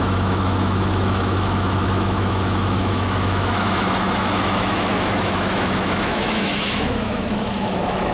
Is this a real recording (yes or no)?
no